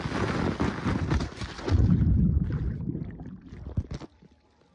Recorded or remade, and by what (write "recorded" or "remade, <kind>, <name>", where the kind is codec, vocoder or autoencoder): recorded